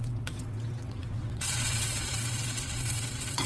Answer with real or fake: fake